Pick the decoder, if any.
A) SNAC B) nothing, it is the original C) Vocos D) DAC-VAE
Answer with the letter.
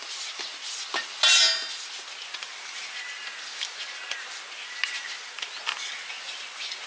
B